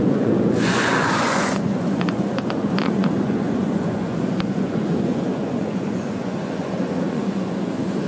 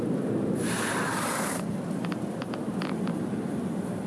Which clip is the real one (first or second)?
second